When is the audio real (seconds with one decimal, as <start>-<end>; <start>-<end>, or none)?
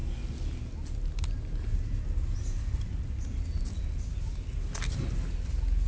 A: 0.0-5.9